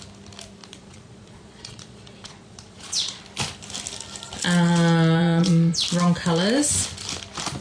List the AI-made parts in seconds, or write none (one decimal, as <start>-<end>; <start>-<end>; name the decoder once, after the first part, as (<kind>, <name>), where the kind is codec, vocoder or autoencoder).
0.6-3.2 (vocoder, Vocos); 5.2-5.7